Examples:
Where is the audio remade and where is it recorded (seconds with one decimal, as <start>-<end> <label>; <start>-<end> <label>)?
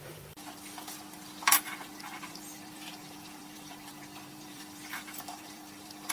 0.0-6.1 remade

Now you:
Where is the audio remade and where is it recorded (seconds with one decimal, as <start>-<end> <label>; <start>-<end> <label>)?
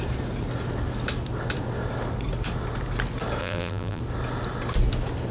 0.0-3.4 recorded; 3.4-4.0 remade; 4.0-5.3 recorded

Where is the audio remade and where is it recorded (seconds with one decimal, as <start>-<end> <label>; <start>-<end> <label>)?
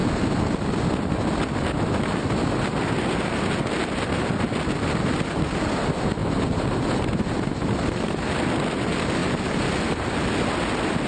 0.0-6.2 recorded; 6.2-8.3 remade; 8.3-11.1 recorded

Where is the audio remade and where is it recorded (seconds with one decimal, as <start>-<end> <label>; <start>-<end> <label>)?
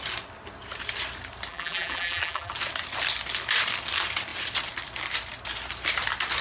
0.0-1.5 recorded; 1.5-2.5 remade; 2.5-6.4 recorded